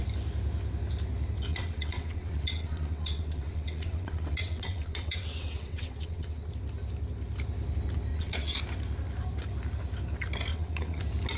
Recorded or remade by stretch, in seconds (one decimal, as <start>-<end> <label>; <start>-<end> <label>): 0.0-1.5 recorded; 1.5-6.5 remade; 6.5-8.1 recorded; 8.1-8.6 remade; 8.6-10.5 recorded; 10.5-11.0 remade; 11.0-11.4 recorded